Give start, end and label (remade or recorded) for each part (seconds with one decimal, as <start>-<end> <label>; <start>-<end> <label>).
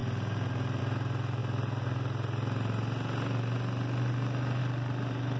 0.0-5.4 recorded